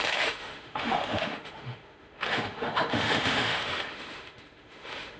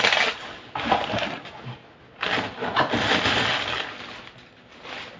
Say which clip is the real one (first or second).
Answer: second